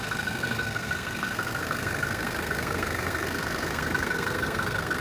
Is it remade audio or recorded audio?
remade